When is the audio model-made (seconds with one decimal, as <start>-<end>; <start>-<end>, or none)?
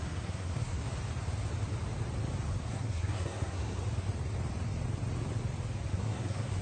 0.0-0.8; 2.7-3.8; 5.9-6.6